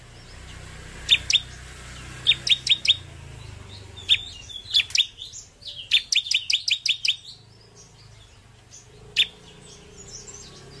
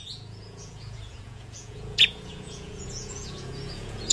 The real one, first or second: first